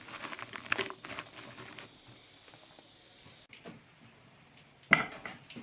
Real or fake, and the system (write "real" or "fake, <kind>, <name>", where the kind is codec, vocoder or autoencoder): real